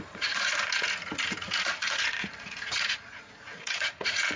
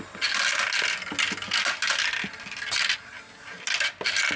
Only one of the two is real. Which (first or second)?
second